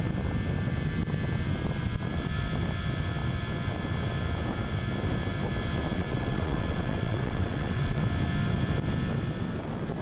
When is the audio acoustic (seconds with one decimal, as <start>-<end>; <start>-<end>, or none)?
0.0-5.9; 8.0-10.0